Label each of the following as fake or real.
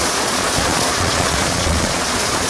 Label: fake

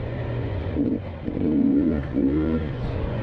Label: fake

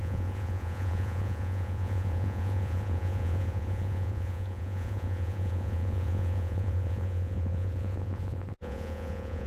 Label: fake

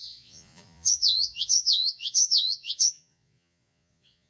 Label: fake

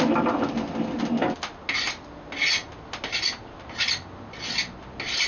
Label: real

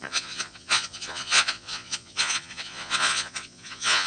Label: fake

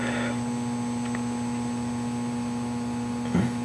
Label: real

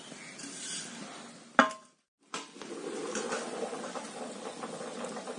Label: real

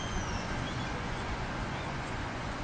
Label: fake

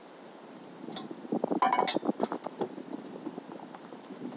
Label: real